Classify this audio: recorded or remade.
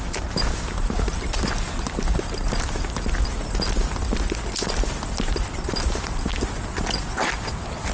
recorded